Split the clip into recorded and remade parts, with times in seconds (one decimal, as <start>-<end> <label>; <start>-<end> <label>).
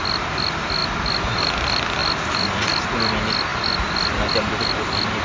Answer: 0.0-5.2 recorded